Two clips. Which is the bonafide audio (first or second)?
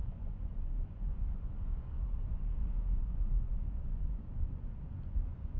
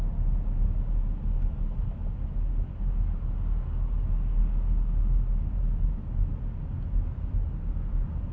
second